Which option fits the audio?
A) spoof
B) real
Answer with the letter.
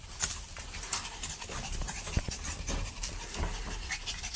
B